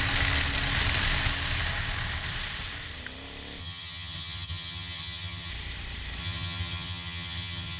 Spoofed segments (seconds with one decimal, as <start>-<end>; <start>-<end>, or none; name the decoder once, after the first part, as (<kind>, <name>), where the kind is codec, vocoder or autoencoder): 3.6-5.5 (vocoder, HiFi-GAN); 6.2-7.8